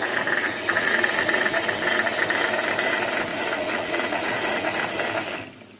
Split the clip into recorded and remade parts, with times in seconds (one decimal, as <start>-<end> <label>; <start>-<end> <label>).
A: 0.0-0.4 recorded; 0.4-1.6 remade; 1.6-3.3 recorded; 3.3-5.1 remade; 5.1-5.8 recorded